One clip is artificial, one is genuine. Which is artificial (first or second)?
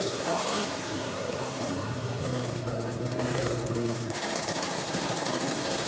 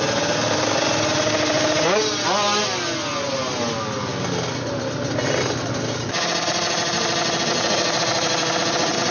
first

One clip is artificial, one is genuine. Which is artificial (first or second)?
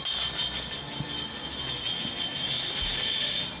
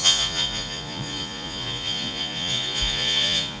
second